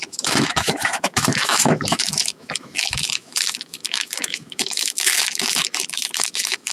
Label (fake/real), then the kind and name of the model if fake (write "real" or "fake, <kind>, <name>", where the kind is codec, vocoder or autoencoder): fake, autoencoder, DAC-VAE